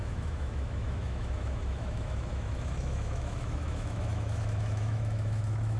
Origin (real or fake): fake